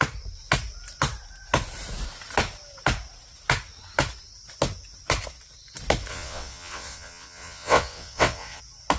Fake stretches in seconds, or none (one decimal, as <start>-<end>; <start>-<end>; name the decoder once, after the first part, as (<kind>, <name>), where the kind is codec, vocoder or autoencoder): 6.1-8.6 (vocoder, WaveNeXt)